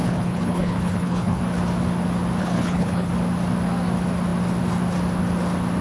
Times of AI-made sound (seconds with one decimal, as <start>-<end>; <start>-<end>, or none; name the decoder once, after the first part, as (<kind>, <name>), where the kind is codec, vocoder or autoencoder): 0.0-1.4 (codec, HILCodec); 2.4-3.1